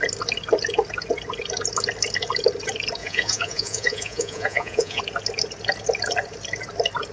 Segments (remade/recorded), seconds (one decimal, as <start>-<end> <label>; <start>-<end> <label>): 0.0-3.0 recorded; 3.0-5.0 remade; 5.0-7.1 recorded